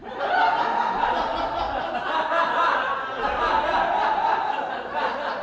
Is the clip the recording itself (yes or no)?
yes